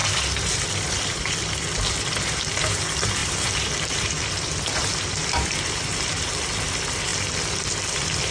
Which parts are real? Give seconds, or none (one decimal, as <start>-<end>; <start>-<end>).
1.2-3.2; 6.3-8.3